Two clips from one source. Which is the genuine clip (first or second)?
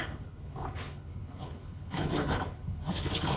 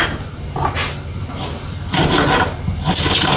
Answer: second